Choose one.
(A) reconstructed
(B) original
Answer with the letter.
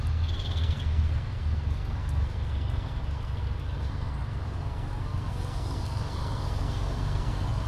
A